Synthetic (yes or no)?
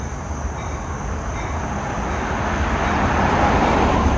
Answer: no